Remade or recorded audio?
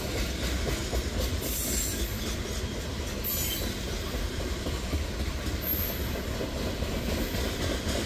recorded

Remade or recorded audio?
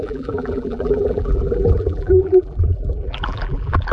remade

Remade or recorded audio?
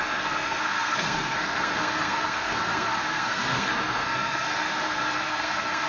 remade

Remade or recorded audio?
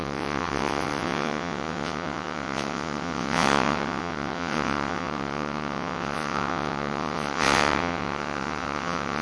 remade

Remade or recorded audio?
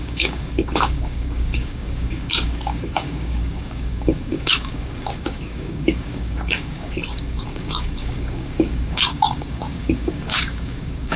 remade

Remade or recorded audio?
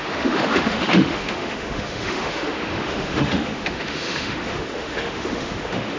remade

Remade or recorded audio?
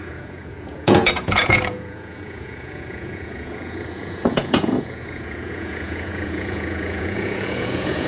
remade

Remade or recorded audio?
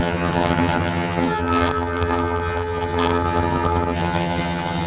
remade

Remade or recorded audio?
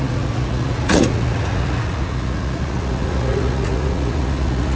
remade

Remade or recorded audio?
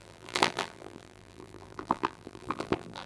remade